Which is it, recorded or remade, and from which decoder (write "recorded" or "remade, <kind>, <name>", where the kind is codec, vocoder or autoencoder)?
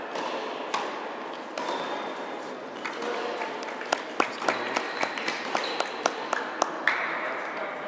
recorded